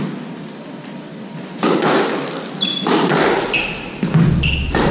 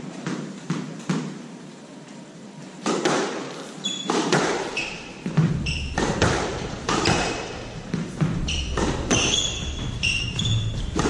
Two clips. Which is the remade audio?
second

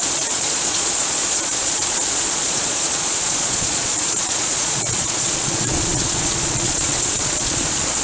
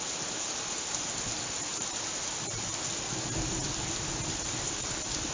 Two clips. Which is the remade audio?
first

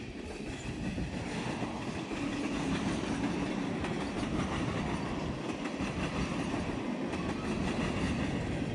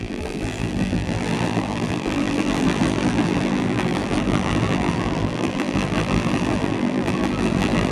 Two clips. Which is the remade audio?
second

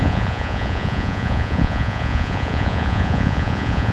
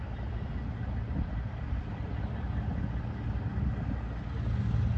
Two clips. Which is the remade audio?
first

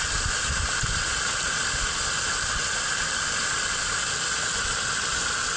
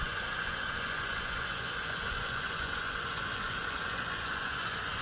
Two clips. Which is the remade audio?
second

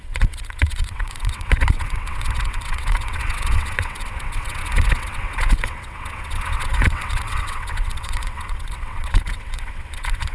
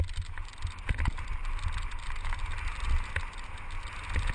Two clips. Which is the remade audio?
first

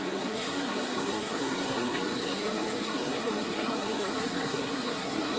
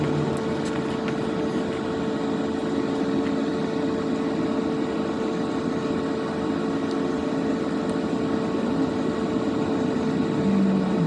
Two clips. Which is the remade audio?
first